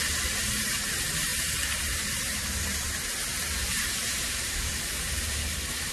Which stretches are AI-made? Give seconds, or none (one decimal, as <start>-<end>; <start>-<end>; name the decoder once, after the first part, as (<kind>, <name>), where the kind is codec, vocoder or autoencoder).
0.6-5.9 (vocoder, BigVGAN v2)